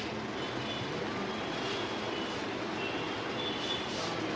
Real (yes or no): yes